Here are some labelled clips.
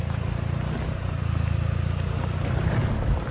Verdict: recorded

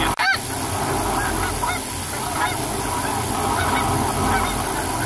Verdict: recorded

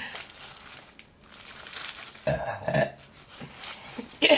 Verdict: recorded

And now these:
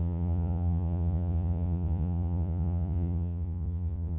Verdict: remade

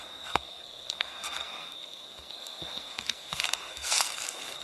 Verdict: remade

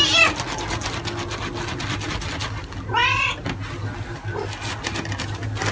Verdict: recorded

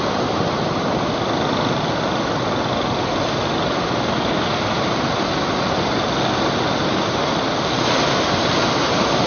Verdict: recorded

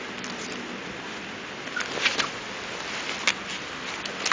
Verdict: recorded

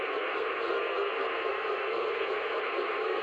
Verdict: remade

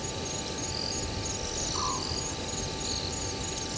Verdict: recorded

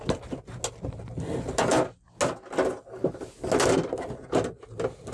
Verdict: recorded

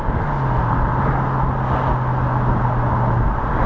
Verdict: recorded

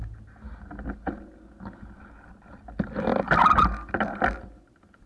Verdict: recorded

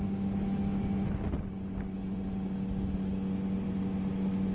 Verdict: recorded